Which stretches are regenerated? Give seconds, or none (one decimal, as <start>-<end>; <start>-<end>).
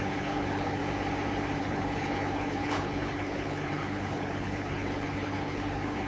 0.0-0.8; 1.6-6.1